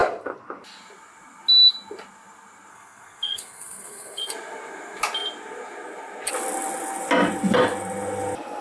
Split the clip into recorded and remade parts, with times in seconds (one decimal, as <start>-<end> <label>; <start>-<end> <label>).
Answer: 0.0-2.7 recorded; 2.7-4.2 remade; 4.2-8.6 recorded